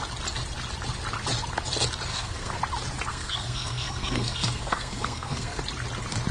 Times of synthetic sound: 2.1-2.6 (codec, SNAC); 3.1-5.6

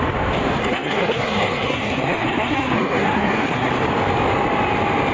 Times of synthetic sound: 0.6-3.7 (codec, SNAC)

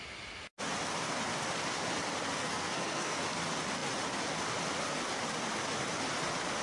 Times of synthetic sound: 2.4-3.2 (codec, SNAC)

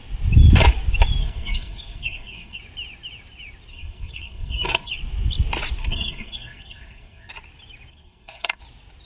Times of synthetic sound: 1.2-2.6 (codec, SNAC); 3.7-4.9; 5.8-7.3; 7.9-8.6

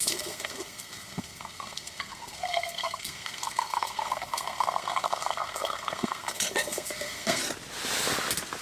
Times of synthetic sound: 0.0-7.4 (codec, SNAC)

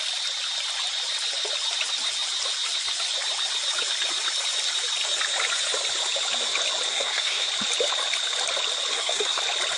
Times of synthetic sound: 6.9-7.5 (codec, SNAC); 8.9-9.4

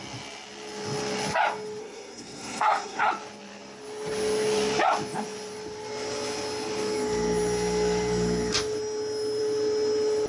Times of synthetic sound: 1.8-3.1 (codec, SNAC)

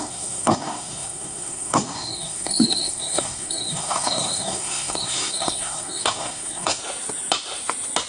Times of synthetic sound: 0.0-6.8 (codec, SNAC)